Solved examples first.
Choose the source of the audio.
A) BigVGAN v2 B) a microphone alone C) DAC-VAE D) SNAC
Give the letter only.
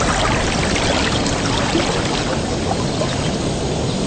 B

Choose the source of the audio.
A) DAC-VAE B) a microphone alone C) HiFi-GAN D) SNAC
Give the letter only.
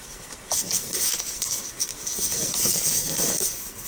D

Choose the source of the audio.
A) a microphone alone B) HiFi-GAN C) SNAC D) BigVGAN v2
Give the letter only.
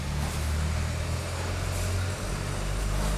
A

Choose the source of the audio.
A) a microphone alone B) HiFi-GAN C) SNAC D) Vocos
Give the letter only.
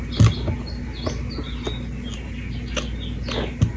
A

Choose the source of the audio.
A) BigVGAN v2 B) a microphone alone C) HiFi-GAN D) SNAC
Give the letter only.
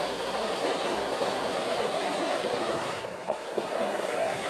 D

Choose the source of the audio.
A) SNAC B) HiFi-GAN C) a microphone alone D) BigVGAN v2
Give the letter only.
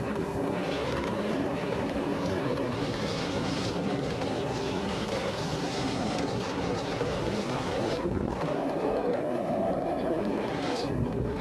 A